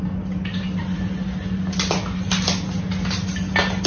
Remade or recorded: recorded